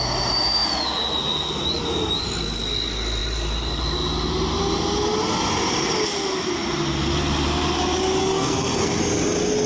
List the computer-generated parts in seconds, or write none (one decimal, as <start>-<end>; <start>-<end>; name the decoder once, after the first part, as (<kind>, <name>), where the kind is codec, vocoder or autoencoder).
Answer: 8.2-9.0 (codec, SNAC)